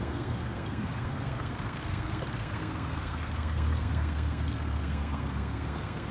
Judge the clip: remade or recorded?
remade